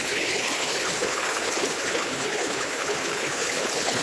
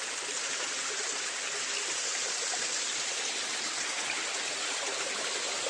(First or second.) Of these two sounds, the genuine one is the second